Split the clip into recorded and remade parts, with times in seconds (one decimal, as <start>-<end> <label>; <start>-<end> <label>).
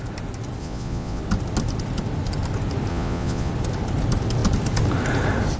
0.0-0.6 recorded; 0.6-1.2 remade; 1.2-2.9 recorded; 2.9-3.5 remade; 3.5-5.6 recorded